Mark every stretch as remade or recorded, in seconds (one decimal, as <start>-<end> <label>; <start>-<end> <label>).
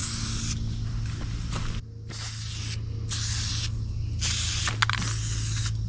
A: 0.0-5.9 recorded